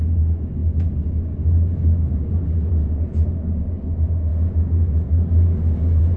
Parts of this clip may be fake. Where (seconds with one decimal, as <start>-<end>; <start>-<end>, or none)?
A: none